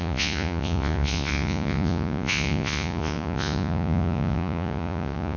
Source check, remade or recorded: remade